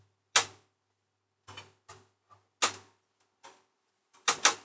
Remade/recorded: recorded